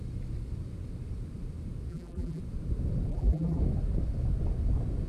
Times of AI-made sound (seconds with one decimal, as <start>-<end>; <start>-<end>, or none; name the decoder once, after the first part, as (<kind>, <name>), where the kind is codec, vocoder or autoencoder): 1.9-2.4 (vocoder, BigVGAN v2); 3.1-3.6